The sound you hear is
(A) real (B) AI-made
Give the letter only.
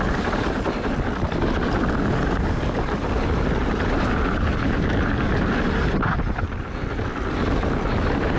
A